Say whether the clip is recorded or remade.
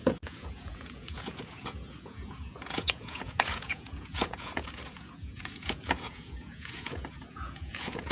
remade